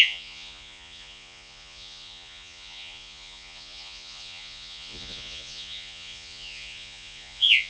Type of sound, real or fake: fake